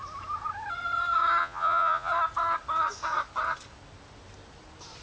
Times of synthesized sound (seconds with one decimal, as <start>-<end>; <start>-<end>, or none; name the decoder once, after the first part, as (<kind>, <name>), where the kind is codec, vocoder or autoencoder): 1.4-2.1 (vocoder, Vocos)